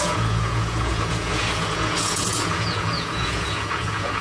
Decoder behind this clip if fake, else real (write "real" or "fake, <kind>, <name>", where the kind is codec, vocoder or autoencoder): fake, vocoder, Vocos